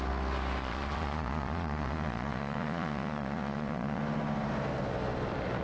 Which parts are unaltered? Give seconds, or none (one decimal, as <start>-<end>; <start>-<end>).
0.0-0.6; 4.0-5.6